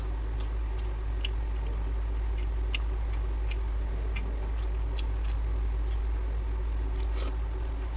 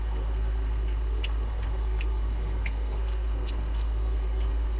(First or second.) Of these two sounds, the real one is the first